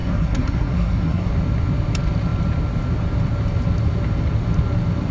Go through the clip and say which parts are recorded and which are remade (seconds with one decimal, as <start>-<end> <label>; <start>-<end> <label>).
0.0-1.3 remade; 1.3-5.1 recorded